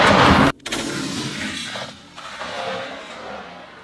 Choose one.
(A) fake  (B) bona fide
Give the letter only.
B